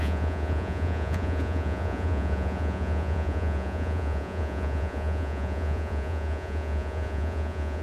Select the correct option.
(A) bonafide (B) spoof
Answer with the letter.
B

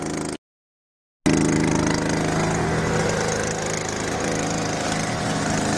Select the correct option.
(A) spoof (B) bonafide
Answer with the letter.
B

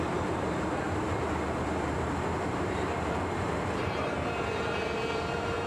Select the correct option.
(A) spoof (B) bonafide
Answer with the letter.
A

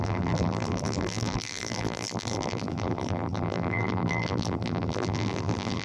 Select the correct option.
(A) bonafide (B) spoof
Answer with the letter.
B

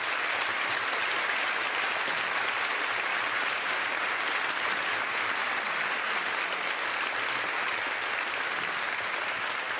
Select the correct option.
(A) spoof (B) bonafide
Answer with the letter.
B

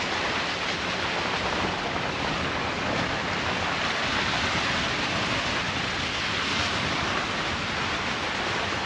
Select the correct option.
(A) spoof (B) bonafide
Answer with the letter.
B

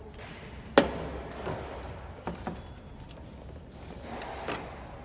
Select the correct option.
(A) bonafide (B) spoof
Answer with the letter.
A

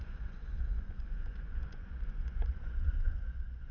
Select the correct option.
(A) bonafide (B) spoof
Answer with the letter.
B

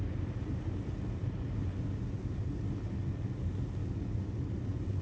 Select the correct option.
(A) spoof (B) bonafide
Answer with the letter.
B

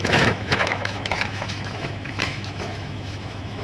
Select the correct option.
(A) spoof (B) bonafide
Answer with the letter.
A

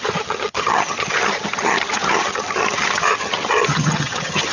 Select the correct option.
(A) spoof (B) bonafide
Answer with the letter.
A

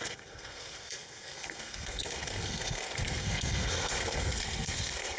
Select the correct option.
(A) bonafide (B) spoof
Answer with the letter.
B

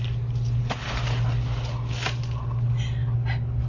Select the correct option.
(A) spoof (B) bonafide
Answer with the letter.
B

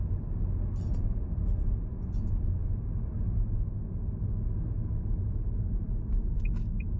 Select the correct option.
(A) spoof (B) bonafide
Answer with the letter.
B